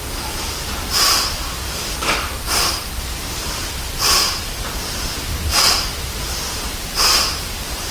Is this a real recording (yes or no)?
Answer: no